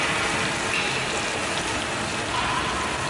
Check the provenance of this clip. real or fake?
real